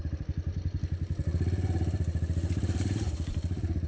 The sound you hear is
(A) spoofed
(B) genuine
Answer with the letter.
A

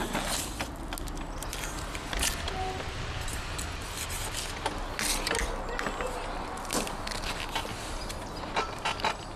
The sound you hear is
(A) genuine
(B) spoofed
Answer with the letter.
A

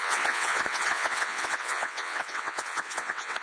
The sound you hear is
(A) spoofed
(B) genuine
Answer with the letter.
A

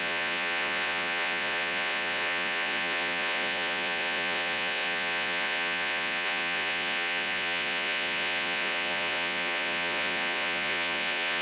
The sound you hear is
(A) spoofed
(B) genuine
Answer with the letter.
A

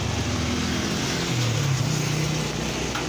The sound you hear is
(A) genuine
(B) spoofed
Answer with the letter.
A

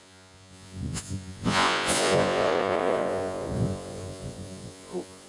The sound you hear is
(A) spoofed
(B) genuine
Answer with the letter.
A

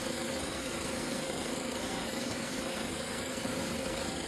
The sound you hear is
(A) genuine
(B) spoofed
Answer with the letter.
B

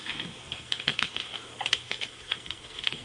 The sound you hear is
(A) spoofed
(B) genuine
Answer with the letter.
A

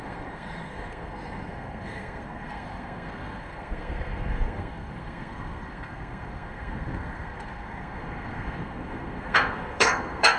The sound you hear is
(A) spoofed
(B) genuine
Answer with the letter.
A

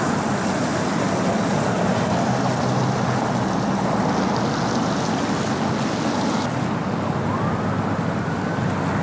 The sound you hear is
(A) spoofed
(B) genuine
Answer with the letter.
B